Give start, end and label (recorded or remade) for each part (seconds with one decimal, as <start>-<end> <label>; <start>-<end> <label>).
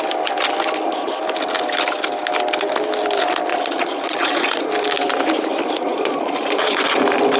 0.0-3.5 recorded; 3.5-4.7 remade; 4.7-5.8 recorded; 5.8-7.0 remade; 7.0-7.4 recorded